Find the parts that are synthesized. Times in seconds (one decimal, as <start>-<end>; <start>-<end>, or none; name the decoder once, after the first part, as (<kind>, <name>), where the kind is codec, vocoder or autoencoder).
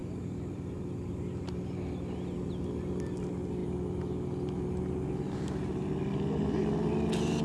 none